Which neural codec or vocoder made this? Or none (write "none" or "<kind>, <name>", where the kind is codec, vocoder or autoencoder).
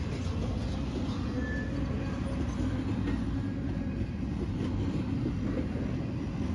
none